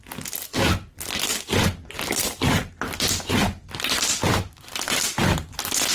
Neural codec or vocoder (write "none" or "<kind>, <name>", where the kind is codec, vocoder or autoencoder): none